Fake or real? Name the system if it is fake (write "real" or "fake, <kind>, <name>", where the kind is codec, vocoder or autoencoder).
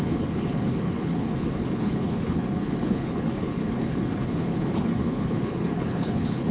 fake, codec, HILCodec